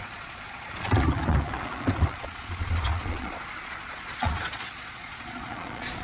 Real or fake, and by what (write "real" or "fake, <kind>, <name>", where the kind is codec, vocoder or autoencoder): fake, vocoder, Vocos